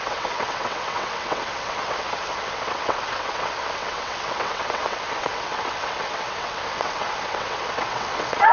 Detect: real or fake fake